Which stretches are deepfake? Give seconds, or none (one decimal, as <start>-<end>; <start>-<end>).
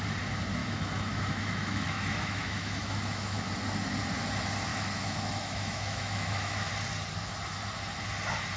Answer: 0.6-3.5; 4.7-6.7